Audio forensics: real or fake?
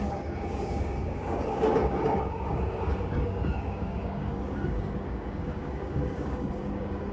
fake